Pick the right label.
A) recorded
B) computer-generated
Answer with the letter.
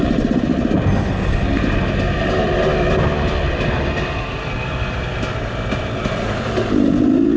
A